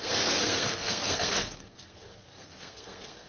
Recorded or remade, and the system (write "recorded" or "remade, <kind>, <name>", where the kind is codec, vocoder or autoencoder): remade, codec, SNAC